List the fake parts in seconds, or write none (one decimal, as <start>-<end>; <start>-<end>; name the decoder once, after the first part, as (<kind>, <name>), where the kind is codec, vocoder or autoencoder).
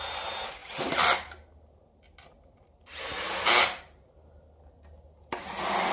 none